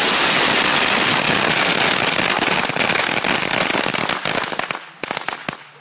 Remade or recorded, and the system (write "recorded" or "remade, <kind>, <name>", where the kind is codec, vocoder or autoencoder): recorded